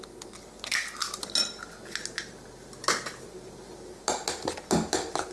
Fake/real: real